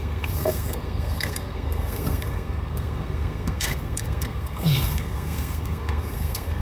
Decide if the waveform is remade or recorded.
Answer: remade